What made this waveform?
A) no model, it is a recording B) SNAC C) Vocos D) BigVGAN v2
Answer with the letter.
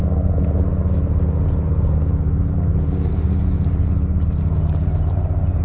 A